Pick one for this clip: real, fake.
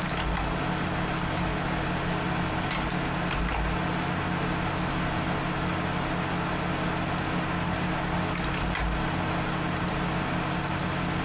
real